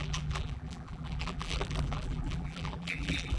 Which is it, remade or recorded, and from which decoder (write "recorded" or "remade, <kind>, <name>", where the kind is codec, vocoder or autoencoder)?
remade, vocoder, BigVGAN v2